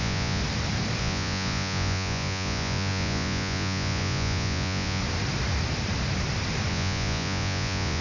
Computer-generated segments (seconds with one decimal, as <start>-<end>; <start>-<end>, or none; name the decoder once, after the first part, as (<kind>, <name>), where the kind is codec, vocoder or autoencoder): 0.0-0.4 (vocoder, Vocos); 1.0-5.0; 6.7-8.0